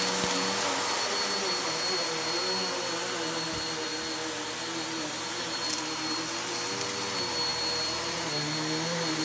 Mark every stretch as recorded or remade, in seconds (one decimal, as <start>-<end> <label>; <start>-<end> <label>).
0.0-9.2 recorded